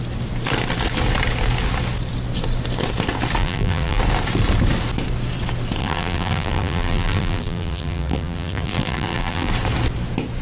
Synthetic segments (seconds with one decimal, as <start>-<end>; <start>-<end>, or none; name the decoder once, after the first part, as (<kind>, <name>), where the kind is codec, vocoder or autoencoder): 3.4-4.0 (vocoder, BigVGAN v2); 5.8-9.5